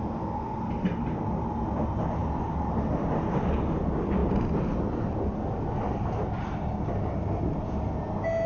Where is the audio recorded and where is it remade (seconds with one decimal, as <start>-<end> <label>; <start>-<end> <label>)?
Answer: 0.0-8.5 recorded